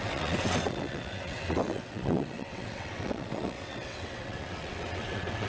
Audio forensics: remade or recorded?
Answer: remade